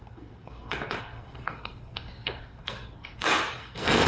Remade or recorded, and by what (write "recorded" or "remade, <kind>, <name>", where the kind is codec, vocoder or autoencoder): remade, codec, SNAC